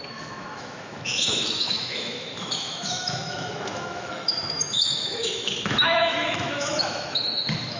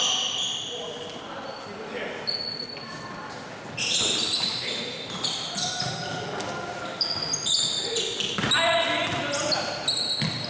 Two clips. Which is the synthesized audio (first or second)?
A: first